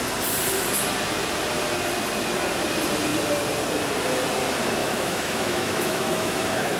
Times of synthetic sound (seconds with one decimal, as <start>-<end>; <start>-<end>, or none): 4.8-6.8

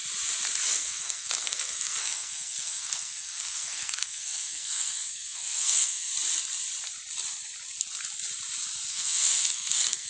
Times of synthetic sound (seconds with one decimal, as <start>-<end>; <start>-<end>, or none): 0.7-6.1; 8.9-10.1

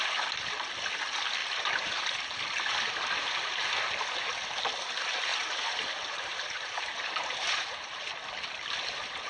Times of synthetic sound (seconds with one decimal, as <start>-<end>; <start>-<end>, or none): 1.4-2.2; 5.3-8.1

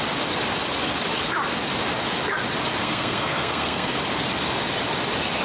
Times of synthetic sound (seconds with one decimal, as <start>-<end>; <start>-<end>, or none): 2.8-3.9

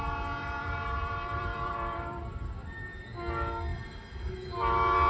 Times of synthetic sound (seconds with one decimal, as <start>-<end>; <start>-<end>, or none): 0.4-2.2

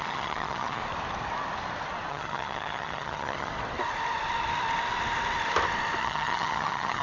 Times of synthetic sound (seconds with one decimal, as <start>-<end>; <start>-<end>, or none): 0.0-0.8; 2.1-3.5; 6.0-7.0